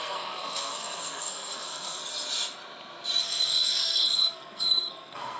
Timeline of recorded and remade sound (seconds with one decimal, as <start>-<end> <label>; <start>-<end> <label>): 0.0-2.0 remade; 2.0-3.2 recorded; 3.2-5.4 remade